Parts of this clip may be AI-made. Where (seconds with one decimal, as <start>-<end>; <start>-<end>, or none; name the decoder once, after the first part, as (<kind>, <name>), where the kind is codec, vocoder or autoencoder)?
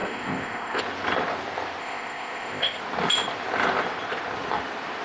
0.0-0.8 (codec, ZipCodec); 1.8-2.8